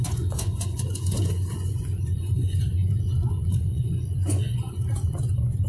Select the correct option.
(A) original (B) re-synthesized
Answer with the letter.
B